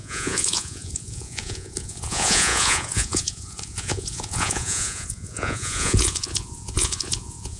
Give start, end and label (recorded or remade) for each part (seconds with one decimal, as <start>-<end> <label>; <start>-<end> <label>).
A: 0.0-7.6 remade